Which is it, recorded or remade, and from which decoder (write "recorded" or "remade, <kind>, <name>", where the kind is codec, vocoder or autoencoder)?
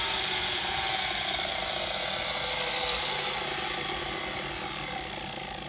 recorded